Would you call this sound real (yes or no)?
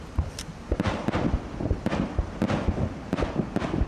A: yes